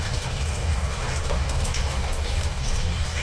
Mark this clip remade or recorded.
remade